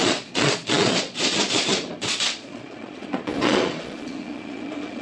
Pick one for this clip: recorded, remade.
remade